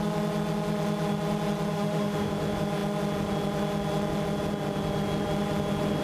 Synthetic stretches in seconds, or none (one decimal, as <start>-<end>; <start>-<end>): 1.7-2.3